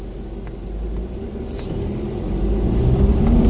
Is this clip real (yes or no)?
yes